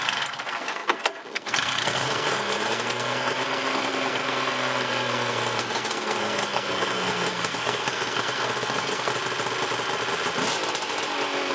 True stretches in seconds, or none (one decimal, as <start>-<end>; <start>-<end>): 9.1-11.5